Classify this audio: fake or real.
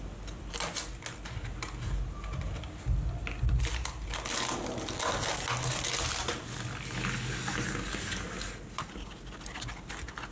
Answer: real